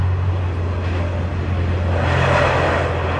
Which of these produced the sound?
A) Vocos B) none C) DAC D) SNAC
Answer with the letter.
B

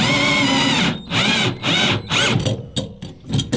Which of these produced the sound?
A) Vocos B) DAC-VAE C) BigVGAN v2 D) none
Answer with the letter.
D